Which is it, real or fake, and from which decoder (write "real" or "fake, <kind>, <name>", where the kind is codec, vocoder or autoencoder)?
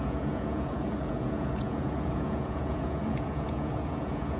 fake, vocoder, Vocos